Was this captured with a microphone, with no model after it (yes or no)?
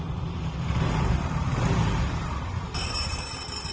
yes